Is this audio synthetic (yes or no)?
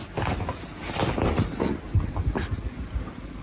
no